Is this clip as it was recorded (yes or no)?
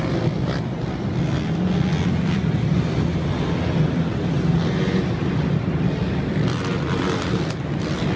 yes